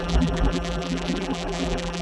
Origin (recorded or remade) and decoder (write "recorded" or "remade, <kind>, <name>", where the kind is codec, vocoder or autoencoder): remade, vocoder, BigVGAN v2